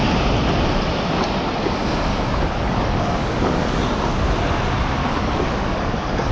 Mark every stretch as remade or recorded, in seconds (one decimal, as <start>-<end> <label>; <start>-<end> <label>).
0.0-2.1 recorded; 2.1-3.8 remade; 3.8-5.0 recorded; 5.0-6.3 remade